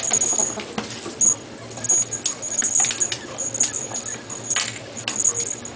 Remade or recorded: recorded